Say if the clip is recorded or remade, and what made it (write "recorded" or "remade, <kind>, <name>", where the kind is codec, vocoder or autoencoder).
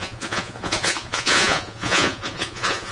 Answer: remade, vocoder, Vocos